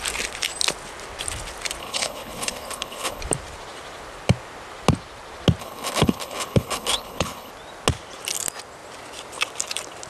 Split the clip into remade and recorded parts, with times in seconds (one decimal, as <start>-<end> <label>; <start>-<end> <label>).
0.0-1.8 recorded; 1.8-3.2 remade; 3.2-5.6 recorded; 5.6-7.5 remade; 7.5-10.1 recorded